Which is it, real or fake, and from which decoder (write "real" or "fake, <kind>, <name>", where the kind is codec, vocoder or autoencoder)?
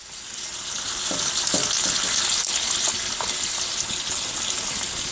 real